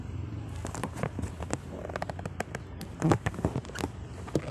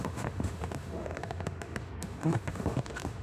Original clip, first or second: first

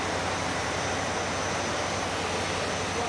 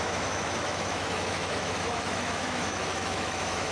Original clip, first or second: first